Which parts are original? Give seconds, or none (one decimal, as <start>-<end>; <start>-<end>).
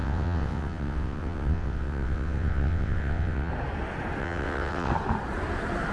3.5-4.2; 4.9-5.9